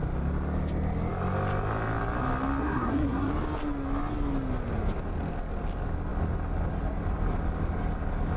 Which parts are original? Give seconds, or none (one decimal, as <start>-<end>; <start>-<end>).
0.0-2.6; 3.3-8.4